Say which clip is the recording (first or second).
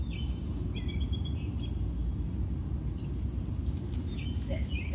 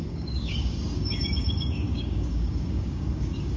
first